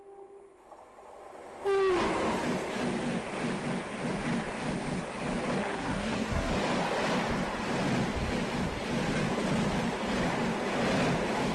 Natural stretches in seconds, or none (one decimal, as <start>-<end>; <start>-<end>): 0.0-5.6; 6.5-11.5